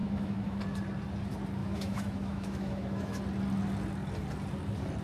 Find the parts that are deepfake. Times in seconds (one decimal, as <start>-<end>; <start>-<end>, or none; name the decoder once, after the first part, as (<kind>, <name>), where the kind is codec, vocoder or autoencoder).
0.0-0.6 (autoencoder, DAC-VAE); 1.6-3.2